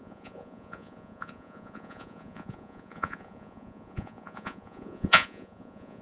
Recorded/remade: remade